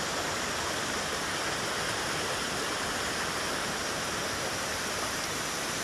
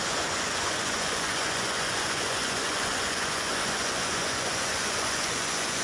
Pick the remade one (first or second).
second